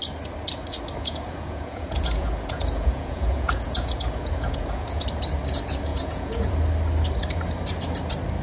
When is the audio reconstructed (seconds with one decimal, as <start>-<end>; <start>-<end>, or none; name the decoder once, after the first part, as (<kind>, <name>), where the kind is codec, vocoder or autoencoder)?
1.0-5.0 (vocoder, Vocos); 5.9-6.5